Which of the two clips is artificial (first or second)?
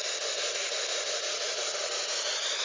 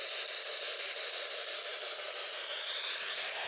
second